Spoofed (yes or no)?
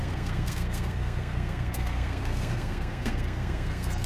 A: yes